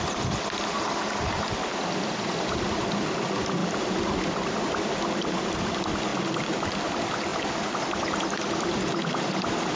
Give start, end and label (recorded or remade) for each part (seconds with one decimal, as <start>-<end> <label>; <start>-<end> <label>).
0.0-3.6 recorded; 3.6-4.7 remade; 4.7-9.8 recorded

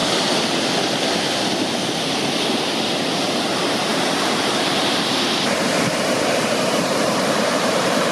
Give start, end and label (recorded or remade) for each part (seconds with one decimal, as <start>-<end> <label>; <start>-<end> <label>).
0.0-3.9 recorded; 3.9-8.1 remade

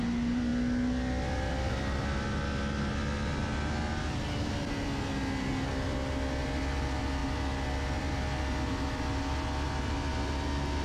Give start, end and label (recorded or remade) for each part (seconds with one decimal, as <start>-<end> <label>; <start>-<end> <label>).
0.0-10.8 recorded

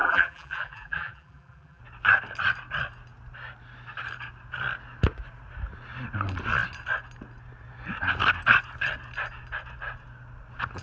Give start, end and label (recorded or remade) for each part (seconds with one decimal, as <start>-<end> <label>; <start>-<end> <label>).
0.0-1.8 remade; 1.8-10.8 recorded

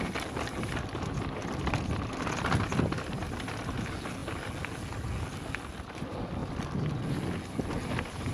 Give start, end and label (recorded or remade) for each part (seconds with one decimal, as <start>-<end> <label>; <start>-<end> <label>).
0.0-8.3 recorded